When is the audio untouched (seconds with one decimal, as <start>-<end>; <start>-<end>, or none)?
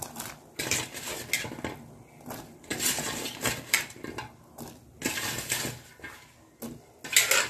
0.0-2.7; 4.2-7.5